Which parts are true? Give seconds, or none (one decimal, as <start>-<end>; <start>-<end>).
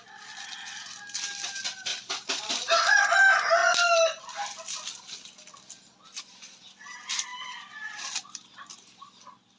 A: 0.0-1.9; 3.2-7.3; 9.0-9.6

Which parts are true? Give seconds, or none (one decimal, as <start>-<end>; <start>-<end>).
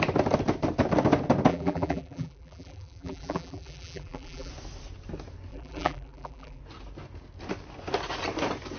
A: 0.0-1.5; 4.5-5.5; 6.6-8.8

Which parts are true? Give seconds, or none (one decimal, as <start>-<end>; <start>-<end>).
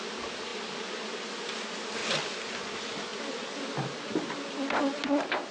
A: 0.0-5.5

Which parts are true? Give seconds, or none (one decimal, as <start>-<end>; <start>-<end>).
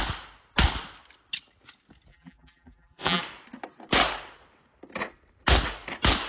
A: 0.0-2.1; 3.2-6.3